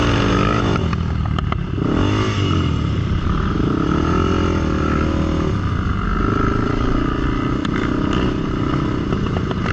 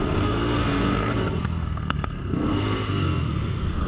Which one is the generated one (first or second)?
second